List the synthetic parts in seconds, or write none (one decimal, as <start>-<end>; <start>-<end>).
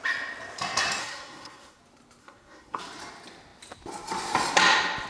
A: 1.0-1.8; 2.2-2.8